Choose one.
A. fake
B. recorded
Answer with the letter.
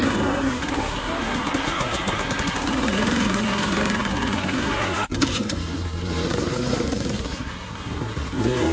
A